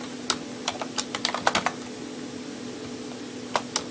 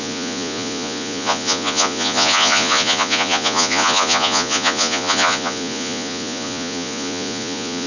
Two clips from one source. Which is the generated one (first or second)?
second